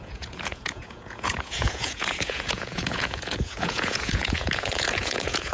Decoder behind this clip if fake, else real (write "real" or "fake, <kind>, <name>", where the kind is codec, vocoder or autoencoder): fake, vocoder, Vocos